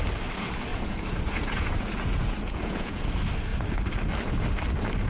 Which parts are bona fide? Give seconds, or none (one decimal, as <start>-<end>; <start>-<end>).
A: 0.0-0.7; 3.1-5.1